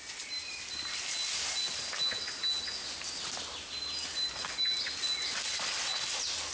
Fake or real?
real